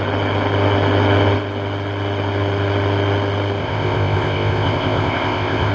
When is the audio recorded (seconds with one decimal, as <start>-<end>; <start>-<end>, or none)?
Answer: 0.0-3.6